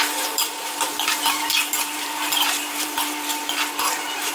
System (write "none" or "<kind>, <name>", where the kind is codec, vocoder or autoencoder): vocoder, BigVGAN v2